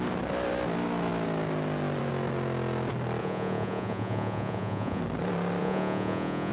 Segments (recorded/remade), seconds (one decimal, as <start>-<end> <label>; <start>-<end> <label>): 0.0-3.2 recorded; 3.2-5.0 remade; 5.0-5.6 recorded; 5.6-6.5 remade